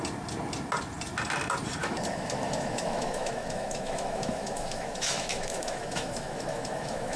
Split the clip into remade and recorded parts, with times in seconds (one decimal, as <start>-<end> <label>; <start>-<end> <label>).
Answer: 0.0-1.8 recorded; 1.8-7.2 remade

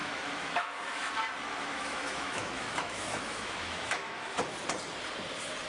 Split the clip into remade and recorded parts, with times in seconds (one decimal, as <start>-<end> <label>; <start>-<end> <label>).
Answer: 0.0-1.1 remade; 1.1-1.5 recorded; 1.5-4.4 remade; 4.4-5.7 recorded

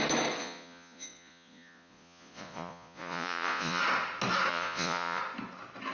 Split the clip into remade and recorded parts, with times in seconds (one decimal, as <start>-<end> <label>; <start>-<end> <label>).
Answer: 0.0-0.4 recorded; 0.4-3.8 remade; 3.8-4.5 recorded; 4.5-5.2 remade; 5.2-5.9 recorded